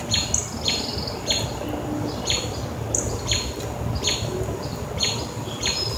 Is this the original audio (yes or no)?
yes